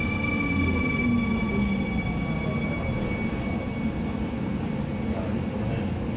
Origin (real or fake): real